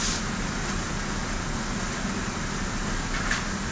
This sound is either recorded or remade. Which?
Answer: recorded